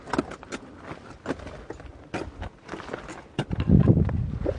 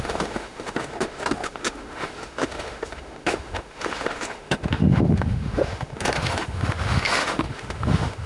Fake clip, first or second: second